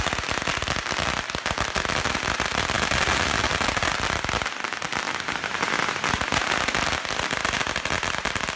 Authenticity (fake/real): real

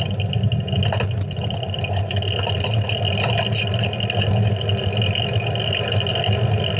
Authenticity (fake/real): real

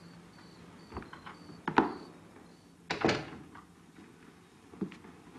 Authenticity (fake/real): real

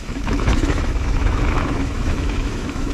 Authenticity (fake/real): fake